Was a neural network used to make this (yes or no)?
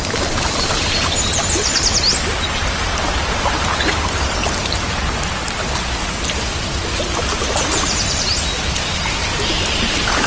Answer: no